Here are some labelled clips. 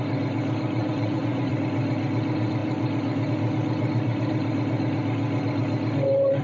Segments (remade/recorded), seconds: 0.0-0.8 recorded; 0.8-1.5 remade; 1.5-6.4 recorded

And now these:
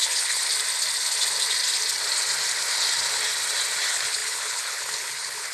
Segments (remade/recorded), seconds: 0.0-0.5 remade; 0.5-3.8 recorded; 3.8-5.5 remade